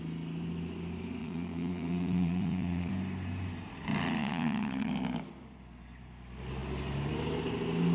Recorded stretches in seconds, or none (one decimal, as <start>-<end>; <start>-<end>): 0.0-1.2; 2.9-4.2; 4.9-7.9